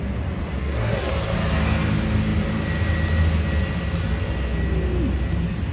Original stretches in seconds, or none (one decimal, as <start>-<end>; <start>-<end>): 0.0-0.6; 1.1-5.7